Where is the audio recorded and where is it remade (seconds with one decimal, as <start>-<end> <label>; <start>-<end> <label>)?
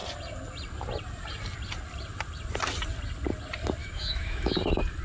0.0-3.8 recorded; 3.8-4.5 remade; 4.5-5.0 recorded